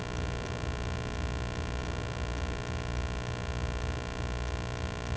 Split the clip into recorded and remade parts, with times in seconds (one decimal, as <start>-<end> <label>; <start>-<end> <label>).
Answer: 0.0-5.2 recorded